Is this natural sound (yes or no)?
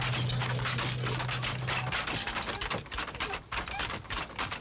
yes